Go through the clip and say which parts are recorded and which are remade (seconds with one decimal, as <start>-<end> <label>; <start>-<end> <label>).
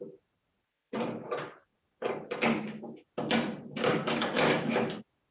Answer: 0.0-5.3 recorded